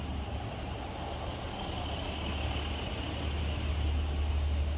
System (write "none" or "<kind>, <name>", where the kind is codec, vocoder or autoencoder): none